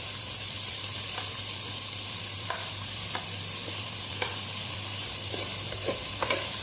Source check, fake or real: fake